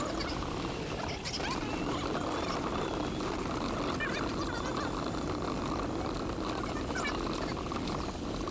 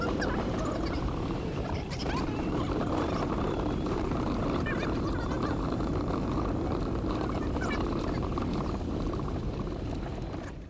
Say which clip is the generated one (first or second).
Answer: second